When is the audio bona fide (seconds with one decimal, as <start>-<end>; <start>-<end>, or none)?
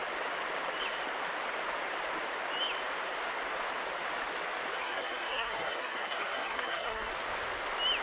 0.0-4.8; 7.1-8.0